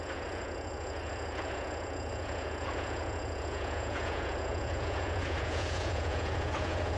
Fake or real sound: fake